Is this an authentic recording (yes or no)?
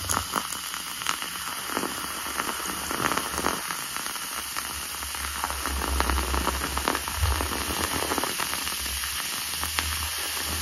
yes